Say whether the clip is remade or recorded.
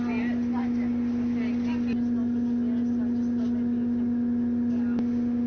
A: recorded